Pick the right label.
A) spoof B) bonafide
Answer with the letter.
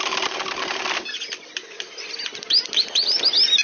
B